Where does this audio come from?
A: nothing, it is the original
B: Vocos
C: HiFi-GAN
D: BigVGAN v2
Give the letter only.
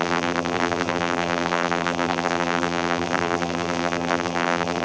D